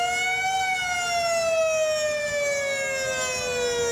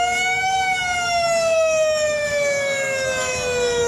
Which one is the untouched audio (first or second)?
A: first